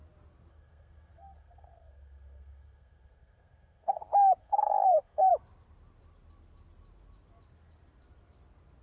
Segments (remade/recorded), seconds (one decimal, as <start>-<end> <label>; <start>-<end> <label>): 0.0-0.5 recorded; 0.5-4.0 remade; 4.0-4.4 recorded; 4.4-5.3 remade; 5.3-8.8 recorded